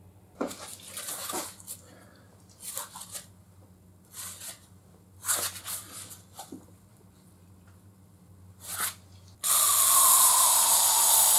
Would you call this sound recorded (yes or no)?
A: yes